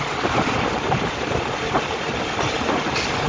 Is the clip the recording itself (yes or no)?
yes